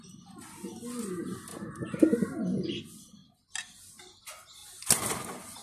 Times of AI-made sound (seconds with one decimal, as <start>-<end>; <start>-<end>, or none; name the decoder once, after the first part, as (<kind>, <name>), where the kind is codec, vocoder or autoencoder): none